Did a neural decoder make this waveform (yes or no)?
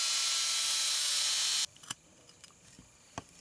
no